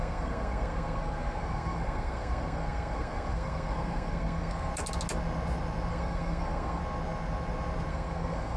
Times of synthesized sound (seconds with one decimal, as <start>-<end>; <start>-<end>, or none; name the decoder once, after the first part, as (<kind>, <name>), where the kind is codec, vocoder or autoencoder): 0.0-4.7 (codec, SNAC); 5.9-6.8; 7.9-8.6